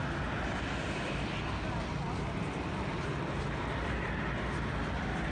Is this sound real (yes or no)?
yes